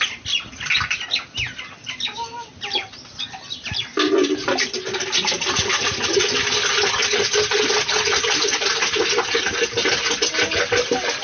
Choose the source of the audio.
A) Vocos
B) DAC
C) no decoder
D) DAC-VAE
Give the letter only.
C